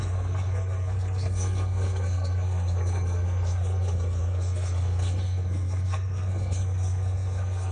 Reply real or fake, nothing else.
fake